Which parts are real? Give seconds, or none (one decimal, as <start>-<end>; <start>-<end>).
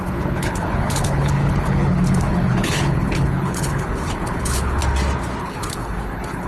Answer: 4.8-5.4